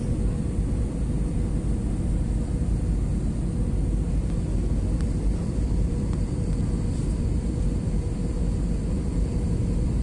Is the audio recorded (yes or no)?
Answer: yes